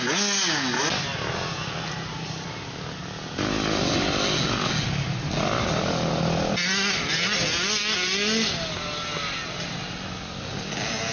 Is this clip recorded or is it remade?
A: recorded